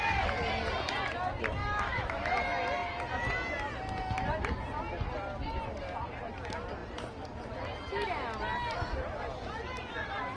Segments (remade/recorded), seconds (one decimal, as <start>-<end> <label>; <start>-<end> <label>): 0.0-1.6 recorded; 1.6-2.3 remade; 2.3-10.4 recorded